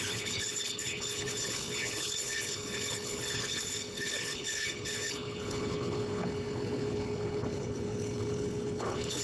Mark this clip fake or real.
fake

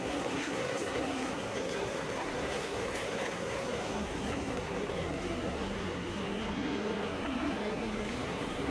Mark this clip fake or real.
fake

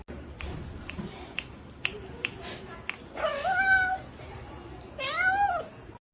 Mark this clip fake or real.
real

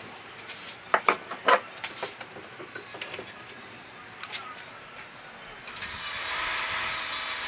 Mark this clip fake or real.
real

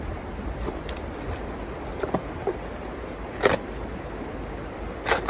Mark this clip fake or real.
fake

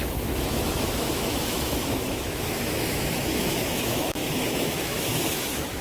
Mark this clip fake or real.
fake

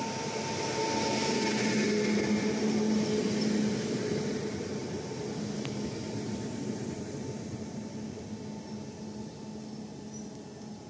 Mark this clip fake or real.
real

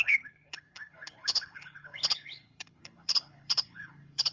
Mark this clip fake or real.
fake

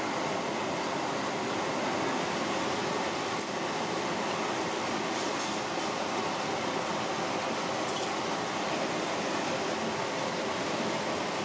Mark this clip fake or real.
real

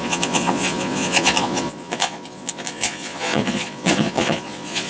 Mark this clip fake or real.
fake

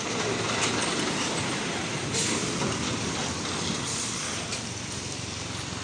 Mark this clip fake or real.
real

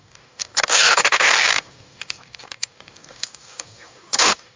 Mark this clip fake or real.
fake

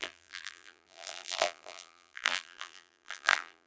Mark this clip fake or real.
fake